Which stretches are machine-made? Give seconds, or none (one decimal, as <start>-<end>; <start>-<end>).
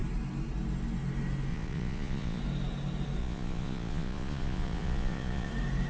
1.5-2.4; 3.2-5.5